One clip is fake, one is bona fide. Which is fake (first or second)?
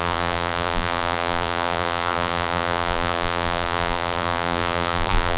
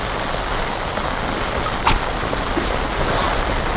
first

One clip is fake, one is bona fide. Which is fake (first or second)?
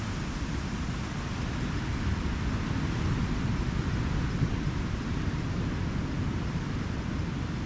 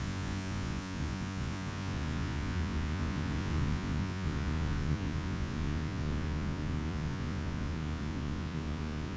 second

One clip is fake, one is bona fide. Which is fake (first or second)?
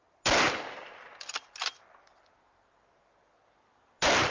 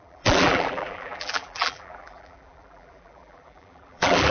second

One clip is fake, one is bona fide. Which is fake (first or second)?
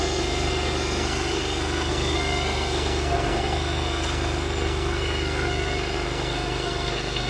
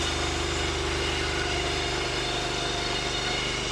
first